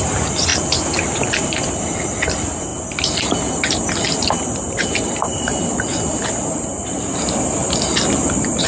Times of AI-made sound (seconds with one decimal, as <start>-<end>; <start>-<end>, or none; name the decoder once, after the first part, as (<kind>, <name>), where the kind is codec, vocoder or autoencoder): none